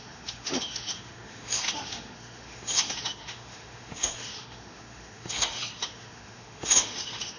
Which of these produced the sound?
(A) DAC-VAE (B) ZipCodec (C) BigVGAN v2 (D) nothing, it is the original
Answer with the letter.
A